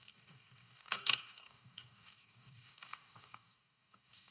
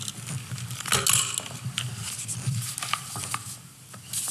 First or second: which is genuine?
second